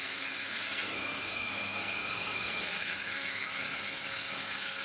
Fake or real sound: fake